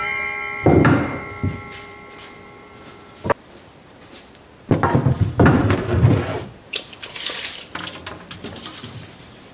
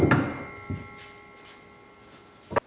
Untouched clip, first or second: second